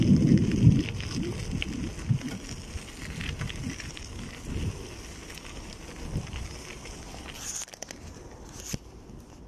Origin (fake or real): real